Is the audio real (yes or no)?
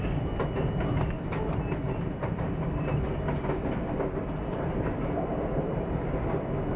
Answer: yes